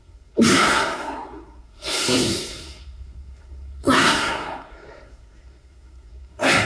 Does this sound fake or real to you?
fake